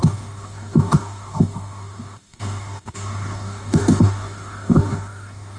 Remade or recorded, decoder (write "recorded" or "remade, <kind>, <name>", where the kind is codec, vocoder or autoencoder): remade, codec, DAC